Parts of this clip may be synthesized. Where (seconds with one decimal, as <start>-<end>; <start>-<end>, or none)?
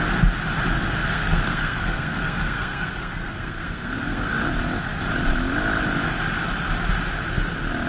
1.0-4.3